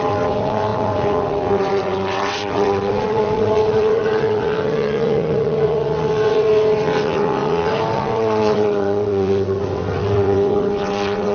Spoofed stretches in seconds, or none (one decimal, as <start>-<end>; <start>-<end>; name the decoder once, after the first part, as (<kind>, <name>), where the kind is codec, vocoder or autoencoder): 0.0-11.3 (vocoder, WaveNeXt)